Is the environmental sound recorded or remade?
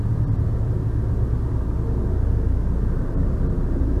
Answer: remade